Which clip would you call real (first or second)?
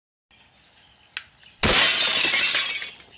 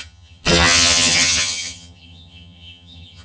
first